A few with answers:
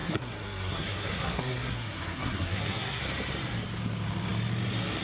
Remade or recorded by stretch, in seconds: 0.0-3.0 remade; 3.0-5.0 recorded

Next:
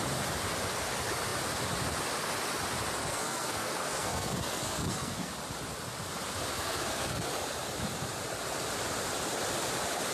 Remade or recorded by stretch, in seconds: 0.0-3.0 recorded; 3.0-5.3 remade; 5.3-6.5 recorded; 6.5-7.3 remade; 7.3-10.1 recorded

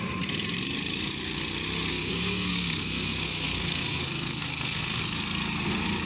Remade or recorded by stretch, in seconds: 0.0-1.9 recorded; 1.9-5.0 remade; 5.0-6.1 recorded

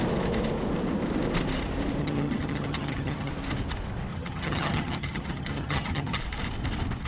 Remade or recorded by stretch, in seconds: 0.0-2.0 recorded; 2.0-3.3 remade; 3.3-4.1 recorded; 4.1-6.2 remade; 6.2-7.1 recorded

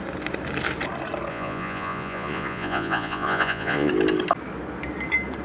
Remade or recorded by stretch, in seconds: 0.0-1.3 recorded; 1.3-3.9 remade; 3.9-5.4 recorded

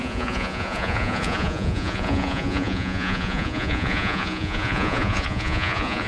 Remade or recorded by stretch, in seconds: 0.0-6.1 remade

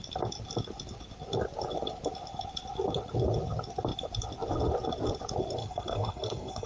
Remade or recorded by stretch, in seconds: 0.0-5.6 recorded; 5.6-6.7 remade